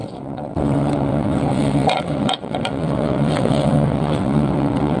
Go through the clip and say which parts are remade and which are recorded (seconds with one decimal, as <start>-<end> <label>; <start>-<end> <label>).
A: 0.0-5.0 remade